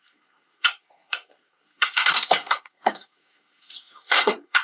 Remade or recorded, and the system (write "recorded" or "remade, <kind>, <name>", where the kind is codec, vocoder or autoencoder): remade, codec, SNAC